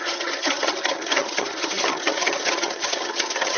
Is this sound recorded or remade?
remade